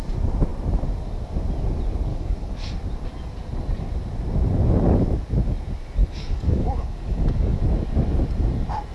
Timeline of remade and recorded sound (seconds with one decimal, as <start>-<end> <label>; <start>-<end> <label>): 0.0-2.1 recorded; 2.1-2.7 remade; 2.7-6.0 recorded; 6.0-7.6 remade; 7.6-8.9 recorded